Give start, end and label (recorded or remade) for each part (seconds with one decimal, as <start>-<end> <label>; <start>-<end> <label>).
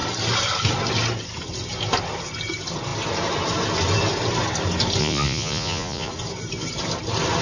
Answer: 0.0-5.0 recorded; 5.0-6.1 remade; 6.1-7.4 recorded